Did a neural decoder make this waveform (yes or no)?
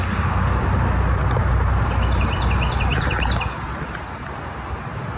no